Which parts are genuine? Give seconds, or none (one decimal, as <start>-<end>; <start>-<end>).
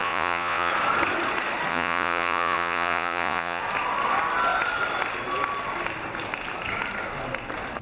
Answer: 0.7-1.7; 3.6-7.8